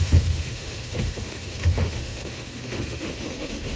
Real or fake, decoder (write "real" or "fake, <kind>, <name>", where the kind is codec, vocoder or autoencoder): fake, autoencoder, DAC-VAE